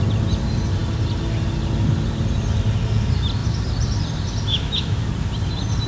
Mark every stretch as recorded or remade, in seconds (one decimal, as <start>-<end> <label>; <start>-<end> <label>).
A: 0.0-4.5 recorded; 4.5-5.0 remade; 5.0-5.9 recorded